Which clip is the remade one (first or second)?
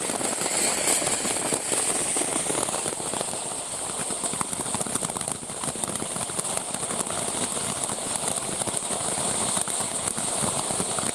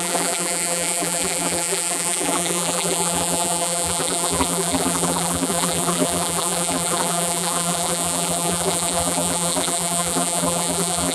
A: second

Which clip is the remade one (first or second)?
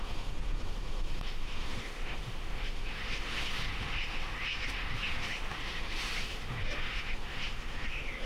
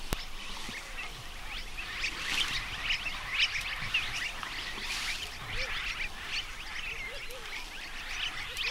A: first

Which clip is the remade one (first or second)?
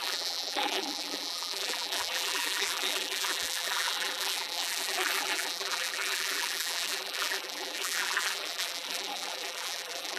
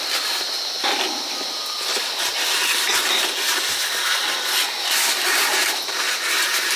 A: first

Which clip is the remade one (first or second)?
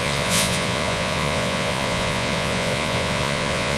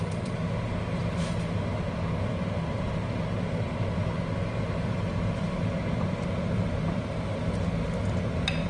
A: first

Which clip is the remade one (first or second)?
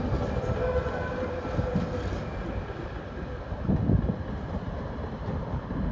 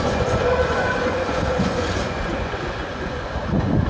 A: second